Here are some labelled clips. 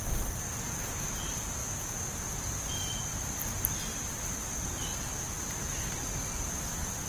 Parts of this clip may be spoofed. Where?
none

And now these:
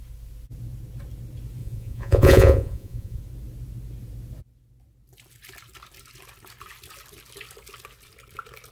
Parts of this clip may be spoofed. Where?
1.6-3.2 (vocoder, Vocos)

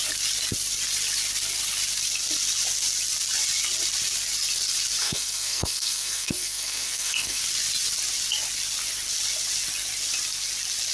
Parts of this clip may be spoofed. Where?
5.0-7.4 (codec, SNAC)

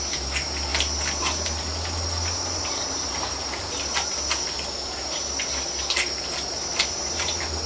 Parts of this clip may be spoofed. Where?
none

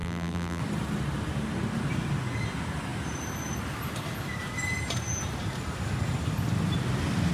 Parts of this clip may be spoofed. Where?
0.0-0.6 (vocoder, BigVGAN v2)